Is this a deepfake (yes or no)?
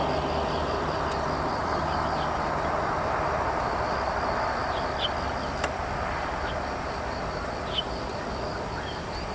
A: no